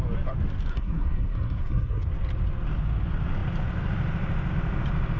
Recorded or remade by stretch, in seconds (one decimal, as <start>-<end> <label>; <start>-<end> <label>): 0.0-0.7 recorded; 0.7-2.0 remade; 2.0-5.2 recorded